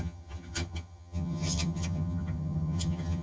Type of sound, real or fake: fake